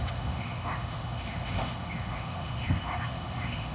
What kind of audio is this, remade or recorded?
remade